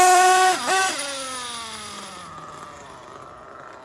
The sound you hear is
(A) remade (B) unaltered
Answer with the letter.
B